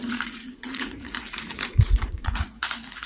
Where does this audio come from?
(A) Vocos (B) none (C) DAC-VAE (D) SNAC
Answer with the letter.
A